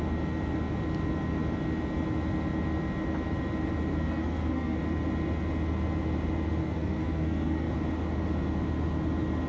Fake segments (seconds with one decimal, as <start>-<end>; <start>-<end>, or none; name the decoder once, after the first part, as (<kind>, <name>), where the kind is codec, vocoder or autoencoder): 3.9-4.8 (codec, SNAC); 6.6-7.7